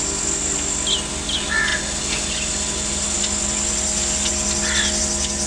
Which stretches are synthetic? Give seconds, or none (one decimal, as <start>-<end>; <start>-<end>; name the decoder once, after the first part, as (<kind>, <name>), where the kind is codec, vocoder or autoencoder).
none